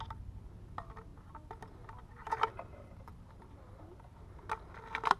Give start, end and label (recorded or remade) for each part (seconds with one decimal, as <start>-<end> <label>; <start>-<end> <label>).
0.0-5.2 recorded